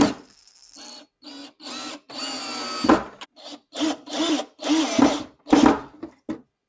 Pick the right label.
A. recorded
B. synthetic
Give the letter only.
A